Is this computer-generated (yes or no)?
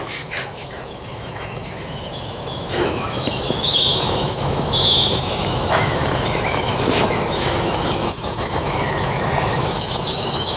yes